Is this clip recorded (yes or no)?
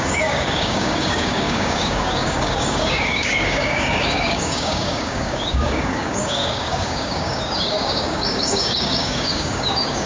no